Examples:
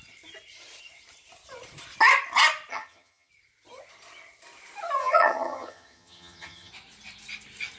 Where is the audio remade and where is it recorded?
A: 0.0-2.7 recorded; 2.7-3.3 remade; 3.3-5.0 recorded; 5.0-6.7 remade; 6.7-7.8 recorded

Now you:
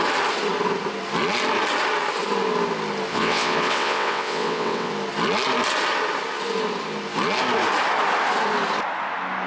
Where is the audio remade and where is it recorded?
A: 0.0-3.1 recorded; 3.1-4.9 remade; 4.9-9.5 recorded

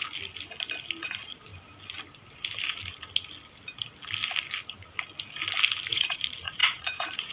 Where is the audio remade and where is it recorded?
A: 0.0-1.0 recorded; 1.0-1.5 remade; 1.5-5.9 recorded; 5.9-7.3 remade

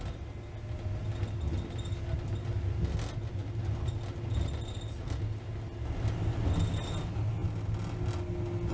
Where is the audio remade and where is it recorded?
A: 0.0-8.7 recorded

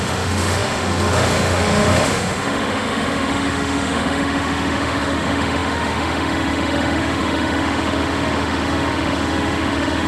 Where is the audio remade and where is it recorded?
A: 0.0-10.1 remade

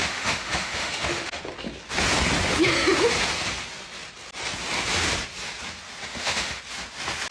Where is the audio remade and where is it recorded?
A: 0.0-1.4 remade; 1.4-6.1 recorded; 6.1-6.6 remade; 6.6-7.3 recorded

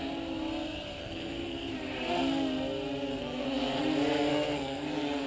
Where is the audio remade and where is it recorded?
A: 0.0-1.0 recorded; 1.0-1.7 remade; 1.7-3.1 recorded; 3.1-3.8 remade; 3.8-4.3 recorded; 4.3-5.3 remade

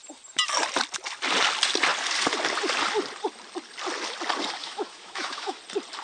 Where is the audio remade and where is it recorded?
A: 0.0-4.6 recorded; 4.6-5.6 remade; 5.6-6.0 recorded